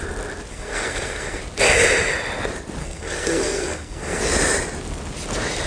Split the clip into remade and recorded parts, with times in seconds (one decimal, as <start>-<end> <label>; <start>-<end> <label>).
0.0-0.5 recorded; 0.5-1.4 remade; 1.4-2.8 recorded; 2.8-4.2 remade; 4.2-5.7 recorded